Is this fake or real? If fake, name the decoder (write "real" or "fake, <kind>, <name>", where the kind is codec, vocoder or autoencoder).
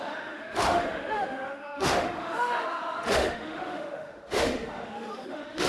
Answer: fake, autoencoder, DAC-VAE